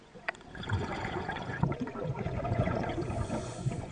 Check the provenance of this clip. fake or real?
fake